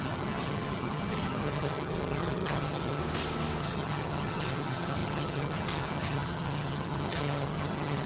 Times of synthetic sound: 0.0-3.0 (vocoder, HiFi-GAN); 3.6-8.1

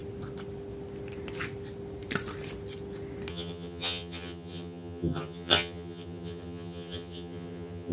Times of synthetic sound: 3.3-7.9 (vocoder, HiFi-GAN)

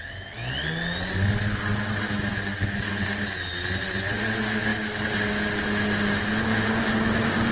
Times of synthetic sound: none

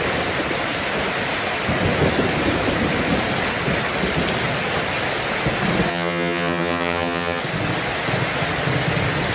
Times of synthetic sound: 5.9-7.4 (vocoder, HiFi-GAN)

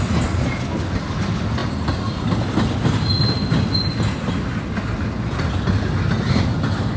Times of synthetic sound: none

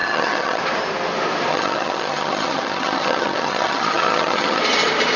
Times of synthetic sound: 0.0-0.6 (vocoder, HiFi-GAN); 1.5-4.6